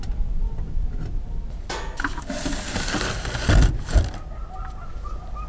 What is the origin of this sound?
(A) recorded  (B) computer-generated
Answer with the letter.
A